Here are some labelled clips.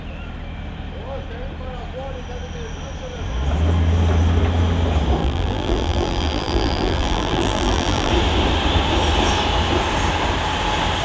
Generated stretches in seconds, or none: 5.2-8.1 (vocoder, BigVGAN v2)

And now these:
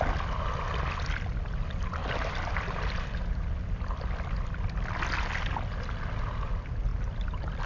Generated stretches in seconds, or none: 2.0-3.3 (vocoder, BigVGAN v2)